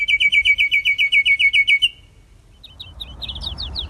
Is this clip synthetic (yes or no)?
no